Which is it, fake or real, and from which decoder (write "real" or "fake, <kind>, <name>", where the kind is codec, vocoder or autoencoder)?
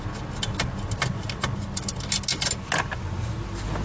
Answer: real